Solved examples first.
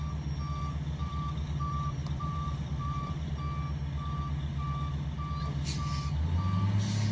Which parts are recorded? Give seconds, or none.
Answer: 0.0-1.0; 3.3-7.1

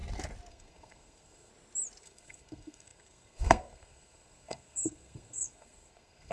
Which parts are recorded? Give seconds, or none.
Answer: 0.0-0.5; 1.5-2.0

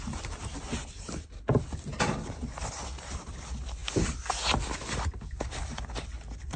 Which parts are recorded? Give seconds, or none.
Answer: 0.0-6.6

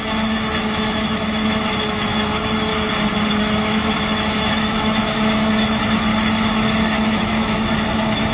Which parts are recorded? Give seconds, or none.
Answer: 2.7-3.3; 6.1-6.9

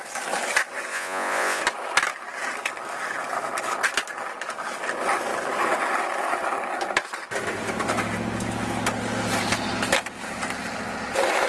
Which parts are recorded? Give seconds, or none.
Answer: 0.0-0.9; 1.6-11.5

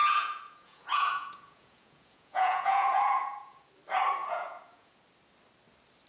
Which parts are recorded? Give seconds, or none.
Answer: 3.7-4.2; 5.0-6.1

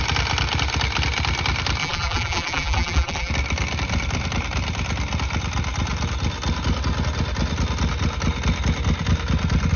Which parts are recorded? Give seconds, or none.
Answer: 0.0-1.8; 3.3-9.8

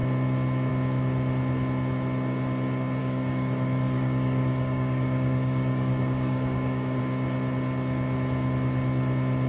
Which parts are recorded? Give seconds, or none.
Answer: 0.0-3.0; 7.0-9.5